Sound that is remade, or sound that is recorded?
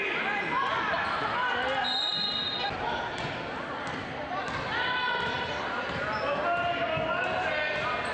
recorded